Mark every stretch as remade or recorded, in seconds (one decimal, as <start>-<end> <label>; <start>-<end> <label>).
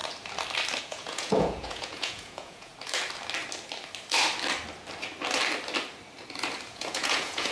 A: 0.0-0.8 recorded; 0.8-2.7 remade; 2.7-6.7 recorded; 6.7-7.5 remade